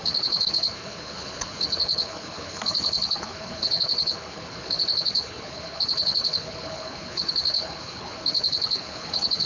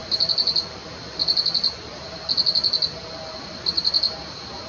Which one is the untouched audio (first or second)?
second